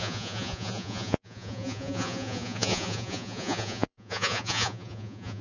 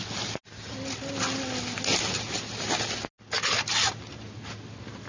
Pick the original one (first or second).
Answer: second